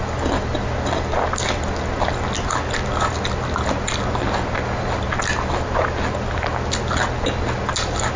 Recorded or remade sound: recorded